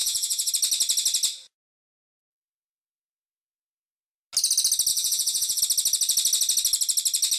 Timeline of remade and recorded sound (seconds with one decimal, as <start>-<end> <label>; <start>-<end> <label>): 0.0-0.5 remade; 0.5-4.9 recorded; 4.9-5.6 remade; 5.6-7.4 recorded